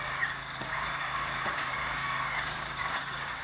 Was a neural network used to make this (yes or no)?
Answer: yes